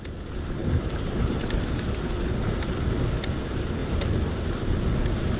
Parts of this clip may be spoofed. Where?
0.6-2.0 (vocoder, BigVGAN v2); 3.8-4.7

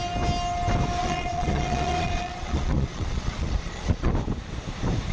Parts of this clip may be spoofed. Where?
1.0-4.1 (vocoder, Vocos)

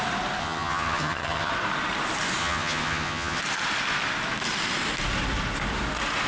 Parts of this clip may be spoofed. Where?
0.4-1.5 (vocoder, HiFi-GAN); 2.4-3.4

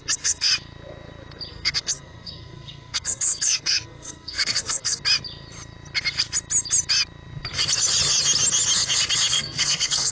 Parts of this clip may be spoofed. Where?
0.0-0.5 (codec, SNAC); 1.5-5.0; 9.3-10.1

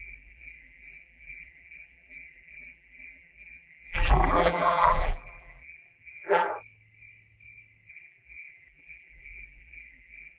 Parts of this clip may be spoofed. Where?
0.0-6.5 (vocoder, BigVGAN v2); 7.9-10.4

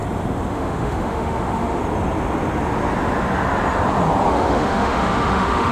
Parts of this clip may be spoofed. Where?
0.5-1.8 (autoencoder, DAC-VAE); 4.3-5.7